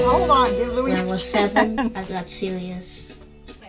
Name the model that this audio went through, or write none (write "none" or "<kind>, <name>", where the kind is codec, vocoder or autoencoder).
none